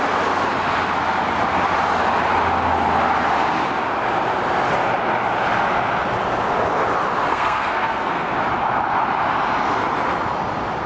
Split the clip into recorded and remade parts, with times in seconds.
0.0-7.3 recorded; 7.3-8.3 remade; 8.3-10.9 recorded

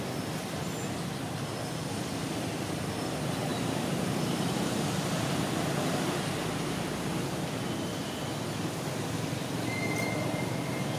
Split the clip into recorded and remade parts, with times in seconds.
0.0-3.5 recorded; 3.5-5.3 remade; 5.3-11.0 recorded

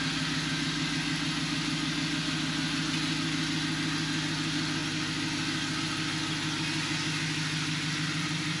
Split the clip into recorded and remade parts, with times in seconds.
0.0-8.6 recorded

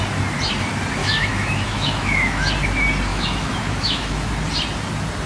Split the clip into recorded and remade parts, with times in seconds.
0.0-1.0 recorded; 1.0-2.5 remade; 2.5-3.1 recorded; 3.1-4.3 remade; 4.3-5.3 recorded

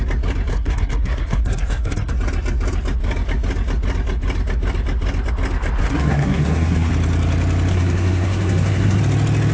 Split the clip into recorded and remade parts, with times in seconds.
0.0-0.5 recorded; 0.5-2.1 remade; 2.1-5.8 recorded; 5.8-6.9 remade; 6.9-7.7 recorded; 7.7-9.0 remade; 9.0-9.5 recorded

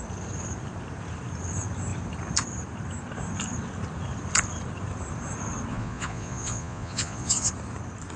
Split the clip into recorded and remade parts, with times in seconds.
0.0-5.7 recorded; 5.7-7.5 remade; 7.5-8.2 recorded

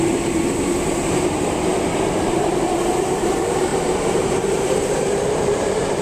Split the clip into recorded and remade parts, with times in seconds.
0.0-6.0 remade

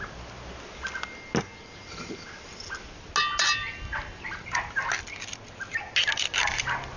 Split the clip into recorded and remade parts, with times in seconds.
0.0-3.6 recorded; 3.6-4.9 remade; 4.9-7.0 recorded